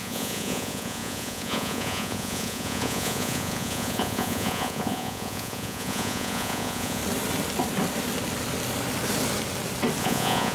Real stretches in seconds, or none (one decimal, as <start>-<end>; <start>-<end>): 7.0-10.0